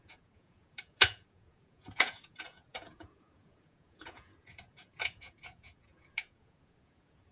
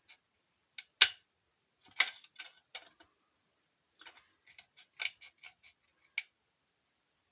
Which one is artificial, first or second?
first